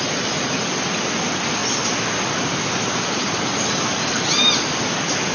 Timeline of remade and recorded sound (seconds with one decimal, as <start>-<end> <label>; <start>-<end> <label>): 0.0-5.3 recorded